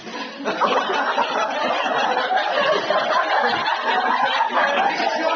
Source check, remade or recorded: recorded